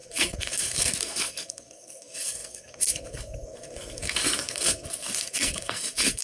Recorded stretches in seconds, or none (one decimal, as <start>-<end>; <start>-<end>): none